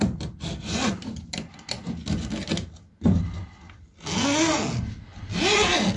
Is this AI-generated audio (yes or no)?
no